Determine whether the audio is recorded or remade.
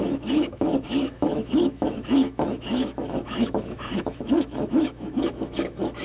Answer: remade